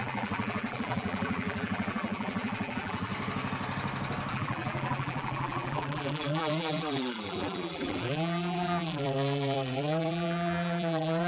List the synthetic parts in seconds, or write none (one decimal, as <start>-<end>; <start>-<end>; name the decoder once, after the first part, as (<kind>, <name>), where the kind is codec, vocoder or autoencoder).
0.0-3.1 (vocoder, BigVGAN v2); 4.3-11.3